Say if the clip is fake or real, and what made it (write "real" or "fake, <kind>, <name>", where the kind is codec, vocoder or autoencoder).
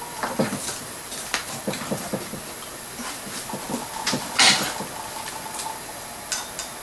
real